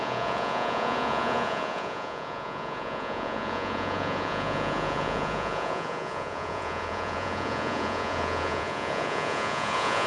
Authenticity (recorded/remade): remade